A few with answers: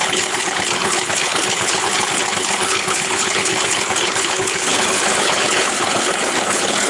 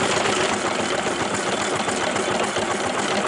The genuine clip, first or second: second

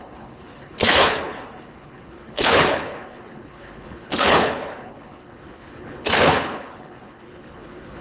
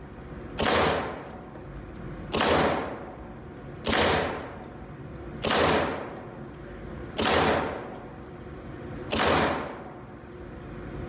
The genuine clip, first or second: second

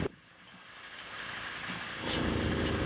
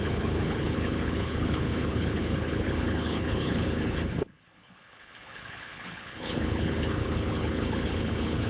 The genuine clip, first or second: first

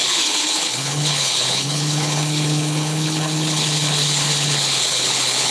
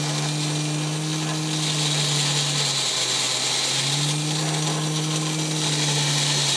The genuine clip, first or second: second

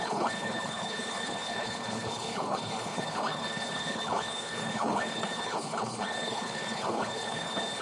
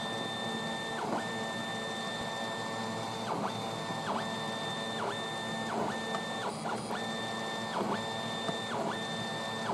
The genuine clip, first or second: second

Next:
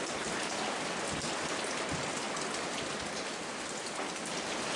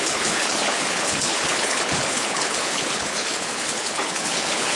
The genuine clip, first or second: first